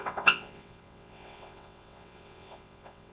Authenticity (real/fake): fake